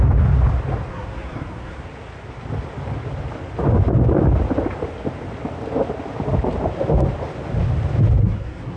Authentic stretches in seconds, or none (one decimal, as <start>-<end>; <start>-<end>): 0.0-0.9; 1.8-8.2